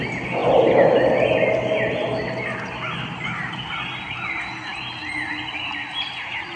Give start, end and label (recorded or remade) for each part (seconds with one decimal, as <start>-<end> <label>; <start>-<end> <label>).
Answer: 0.0-6.6 recorded

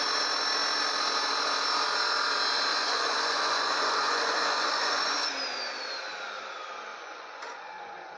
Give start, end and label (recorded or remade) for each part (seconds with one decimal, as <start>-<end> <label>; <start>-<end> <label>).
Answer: 0.0-2.7 recorded; 2.7-5.3 remade; 5.3-6.9 recorded; 6.9-8.2 remade